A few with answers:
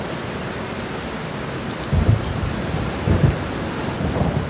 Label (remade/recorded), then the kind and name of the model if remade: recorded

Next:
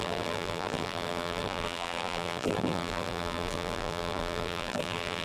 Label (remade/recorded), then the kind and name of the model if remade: remade, vocoder, BigVGAN v2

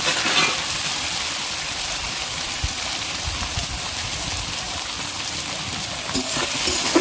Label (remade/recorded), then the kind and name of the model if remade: recorded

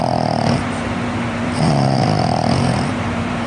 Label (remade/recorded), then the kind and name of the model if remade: remade, vocoder, BigVGAN v2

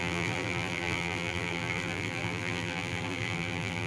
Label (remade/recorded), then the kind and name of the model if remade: remade, vocoder, BigVGAN v2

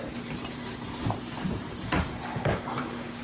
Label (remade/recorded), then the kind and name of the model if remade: remade, vocoder, BigVGAN v2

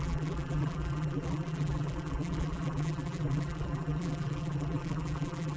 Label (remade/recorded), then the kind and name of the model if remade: remade, vocoder, BigVGAN v2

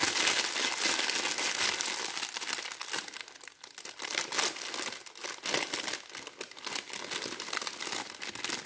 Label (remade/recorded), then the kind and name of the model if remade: recorded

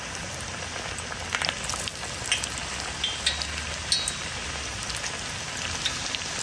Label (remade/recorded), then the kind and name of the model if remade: recorded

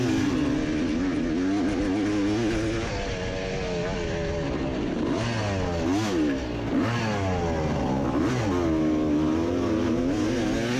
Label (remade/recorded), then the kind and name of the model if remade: recorded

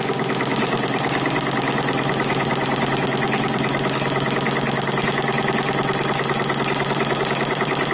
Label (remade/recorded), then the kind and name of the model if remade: recorded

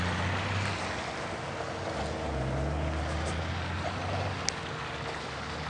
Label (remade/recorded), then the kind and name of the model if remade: recorded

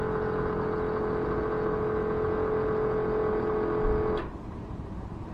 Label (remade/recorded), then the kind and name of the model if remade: recorded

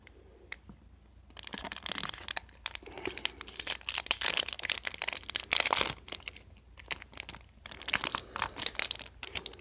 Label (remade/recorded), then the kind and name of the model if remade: remade, vocoder, BigVGAN v2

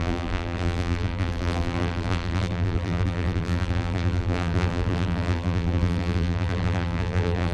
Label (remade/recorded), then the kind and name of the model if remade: remade, vocoder, BigVGAN v2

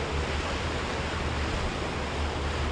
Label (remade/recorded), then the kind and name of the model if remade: recorded